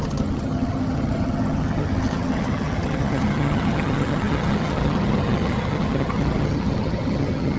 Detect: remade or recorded remade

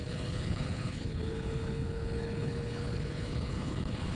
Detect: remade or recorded remade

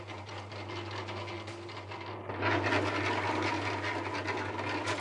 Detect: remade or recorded recorded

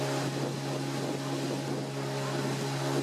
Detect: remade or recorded recorded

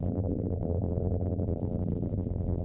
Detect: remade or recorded remade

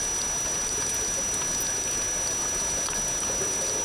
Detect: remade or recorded recorded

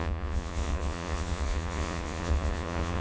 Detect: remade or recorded remade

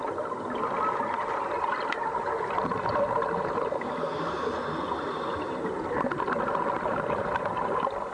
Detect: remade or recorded recorded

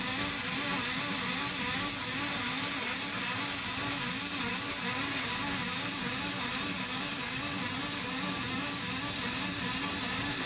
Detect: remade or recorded recorded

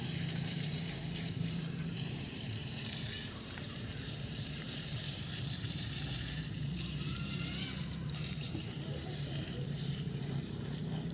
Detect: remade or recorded remade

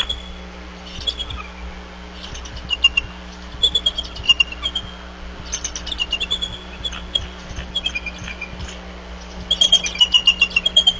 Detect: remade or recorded recorded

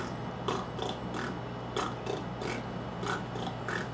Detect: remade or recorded recorded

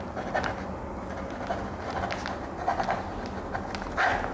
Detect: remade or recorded recorded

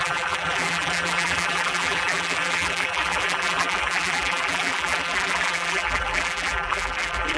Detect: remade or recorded remade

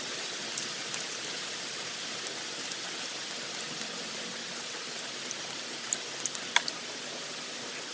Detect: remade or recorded recorded